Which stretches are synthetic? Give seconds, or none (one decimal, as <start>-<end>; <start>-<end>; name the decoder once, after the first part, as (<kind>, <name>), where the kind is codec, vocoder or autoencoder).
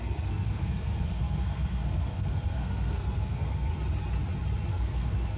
0.0-3.7 (codec, SNAC); 4.7-5.4